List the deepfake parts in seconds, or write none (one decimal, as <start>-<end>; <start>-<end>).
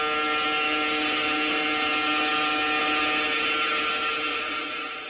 4.3-5.1